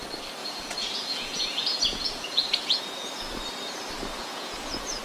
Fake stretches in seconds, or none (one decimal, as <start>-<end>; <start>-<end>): 0.4-3.4; 4.2-5.0